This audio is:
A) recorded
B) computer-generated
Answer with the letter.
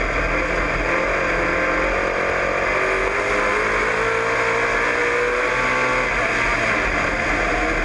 A